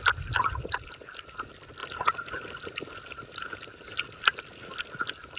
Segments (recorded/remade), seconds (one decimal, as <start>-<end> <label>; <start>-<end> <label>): 0.0-5.4 recorded